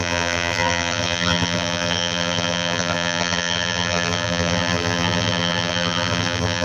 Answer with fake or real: fake